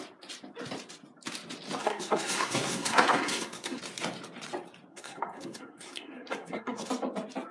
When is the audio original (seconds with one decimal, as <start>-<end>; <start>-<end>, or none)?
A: 0.0-1.8; 3.8-4.9; 6.9-7.5